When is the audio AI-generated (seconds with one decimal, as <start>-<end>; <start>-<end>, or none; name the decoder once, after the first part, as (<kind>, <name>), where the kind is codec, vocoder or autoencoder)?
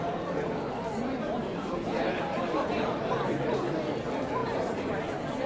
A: 1.5-3.0 (vocoder, BigVGAN v2)